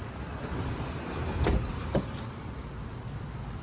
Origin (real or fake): real